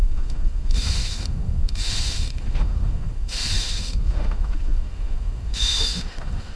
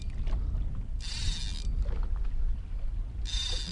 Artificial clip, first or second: first